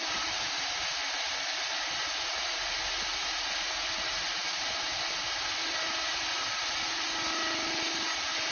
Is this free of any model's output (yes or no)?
yes